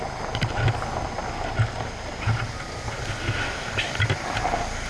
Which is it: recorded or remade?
recorded